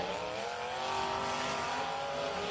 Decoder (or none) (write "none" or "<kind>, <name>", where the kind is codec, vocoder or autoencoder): none